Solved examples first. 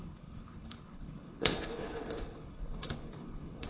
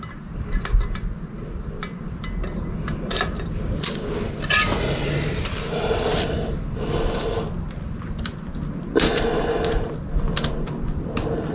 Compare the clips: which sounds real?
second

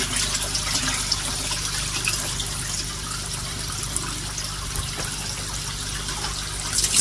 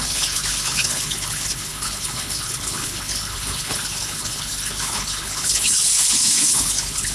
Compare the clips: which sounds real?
first